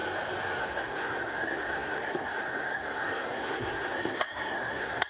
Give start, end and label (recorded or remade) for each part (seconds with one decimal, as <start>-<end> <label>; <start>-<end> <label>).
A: 0.0-0.6 recorded; 0.6-5.1 remade